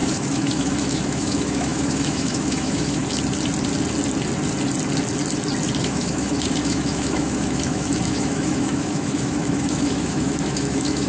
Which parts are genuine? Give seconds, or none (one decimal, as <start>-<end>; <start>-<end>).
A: 3.0-5.8